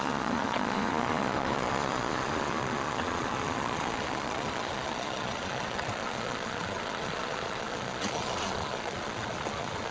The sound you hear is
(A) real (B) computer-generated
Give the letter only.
B